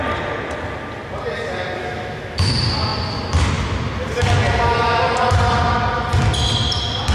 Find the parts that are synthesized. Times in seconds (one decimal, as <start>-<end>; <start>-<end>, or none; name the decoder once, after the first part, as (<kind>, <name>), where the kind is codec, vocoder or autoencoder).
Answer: 1.8-2.5 (autoencoder, DAC-VAE)